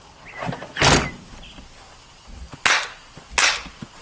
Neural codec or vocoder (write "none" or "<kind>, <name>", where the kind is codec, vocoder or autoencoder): none